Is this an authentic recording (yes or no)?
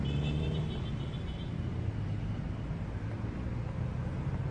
yes